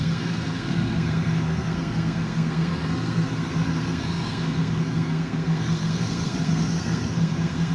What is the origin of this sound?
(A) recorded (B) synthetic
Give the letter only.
B